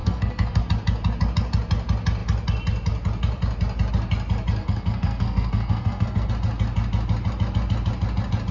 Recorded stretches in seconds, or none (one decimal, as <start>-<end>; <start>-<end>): 0.6-4.6; 6.3-8.5